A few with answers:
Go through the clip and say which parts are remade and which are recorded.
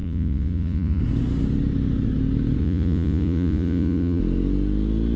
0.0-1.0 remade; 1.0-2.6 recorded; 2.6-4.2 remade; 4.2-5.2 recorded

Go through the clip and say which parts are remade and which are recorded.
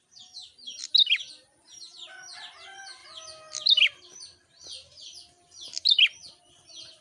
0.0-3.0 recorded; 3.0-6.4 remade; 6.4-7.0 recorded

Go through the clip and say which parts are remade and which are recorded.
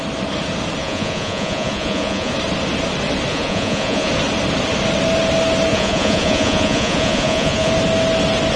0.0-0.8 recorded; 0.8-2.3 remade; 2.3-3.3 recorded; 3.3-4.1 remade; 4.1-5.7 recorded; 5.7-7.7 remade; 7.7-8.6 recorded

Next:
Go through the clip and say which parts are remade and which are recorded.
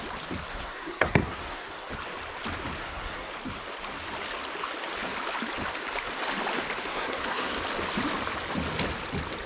0.0-0.5 recorded; 0.5-1.9 remade; 1.9-2.8 recorded; 2.8-3.3 remade; 3.3-6.8 recorded; 6.8-7.6 remade; 7.6-9.5 recorded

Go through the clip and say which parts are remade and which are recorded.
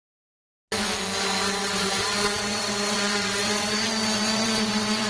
0.0-1.6 recorded; 1.6-5.1 remade